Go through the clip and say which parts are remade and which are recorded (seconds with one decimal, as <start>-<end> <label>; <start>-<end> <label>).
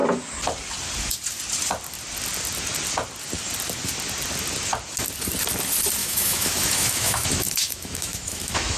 0.0-6.0 recorded; 6.0-8.8 remade